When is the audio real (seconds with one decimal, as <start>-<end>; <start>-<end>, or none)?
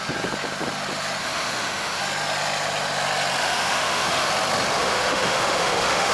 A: 0.0-1.2; 2.0-3.4; 4.3-4.8